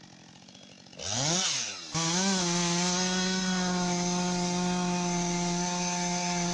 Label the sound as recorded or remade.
recorded